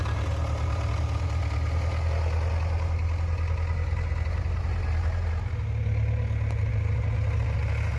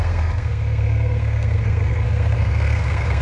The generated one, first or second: second